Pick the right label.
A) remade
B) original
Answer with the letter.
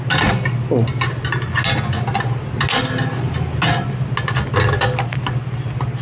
B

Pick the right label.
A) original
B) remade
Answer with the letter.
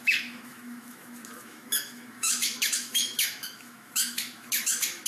B